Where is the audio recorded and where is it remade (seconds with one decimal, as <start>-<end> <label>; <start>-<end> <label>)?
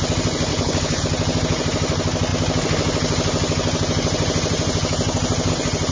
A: 0.0-0.5 recorded; 0.5-1.0 remade; 1.0-5.9 recorded